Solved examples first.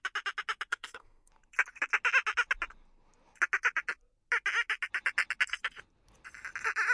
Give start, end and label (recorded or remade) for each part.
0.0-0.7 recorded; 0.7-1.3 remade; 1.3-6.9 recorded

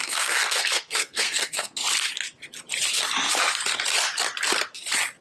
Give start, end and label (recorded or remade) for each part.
0.0-1.8 remade; 1.8-5.2 recorded